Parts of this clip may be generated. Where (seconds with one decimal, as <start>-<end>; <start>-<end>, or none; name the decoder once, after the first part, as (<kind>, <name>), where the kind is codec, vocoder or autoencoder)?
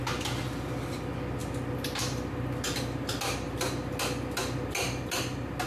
none